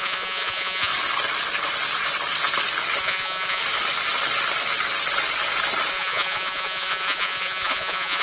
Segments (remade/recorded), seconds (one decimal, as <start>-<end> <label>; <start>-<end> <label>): 0.0-0.9 remade; 0.9-3.0 recorded; 3.0-3.6 remade; 3.6-5.9 recorded; 5.9-8.2 remade